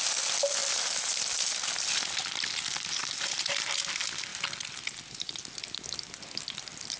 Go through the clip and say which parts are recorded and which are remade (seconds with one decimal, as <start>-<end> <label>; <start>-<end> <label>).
0.0-0.6 recorded; 0.6-1.6 remade; 1.6-7.0 recorded